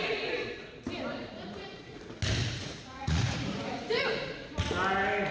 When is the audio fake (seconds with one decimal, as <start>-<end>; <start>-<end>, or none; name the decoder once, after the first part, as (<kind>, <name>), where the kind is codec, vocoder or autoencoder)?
1.1-2.0 (vocoder, Vocos); 2.4-4.5